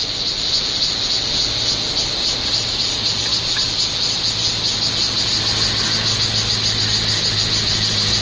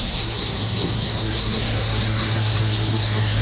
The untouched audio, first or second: first